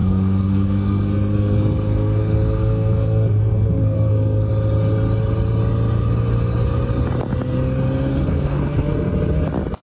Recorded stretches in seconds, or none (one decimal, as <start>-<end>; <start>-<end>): 4.5-8.1; 9.1-10.0